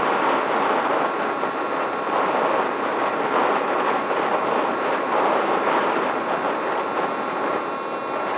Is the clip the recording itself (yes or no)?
yes